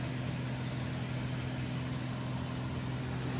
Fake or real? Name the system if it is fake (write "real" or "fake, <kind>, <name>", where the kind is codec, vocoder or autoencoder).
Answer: real